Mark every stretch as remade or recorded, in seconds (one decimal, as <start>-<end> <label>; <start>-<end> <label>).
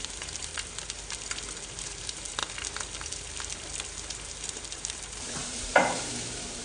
0.0-0.5 remade; 0.5-1.8 recorded; 1.8-2.4 remade; 2.4-4.0 recorded; 4.0-6.6 remade